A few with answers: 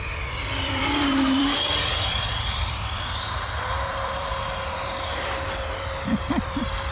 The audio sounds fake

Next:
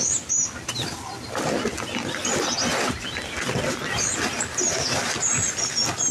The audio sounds real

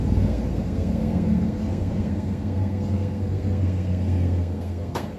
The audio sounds fake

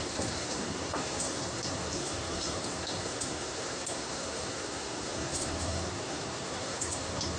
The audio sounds fake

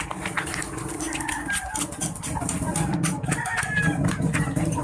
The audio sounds real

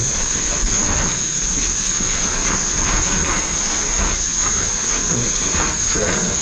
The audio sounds fake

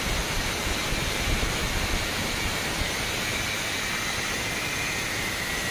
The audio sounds real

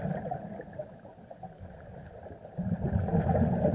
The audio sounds real